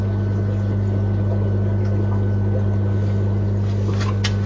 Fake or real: real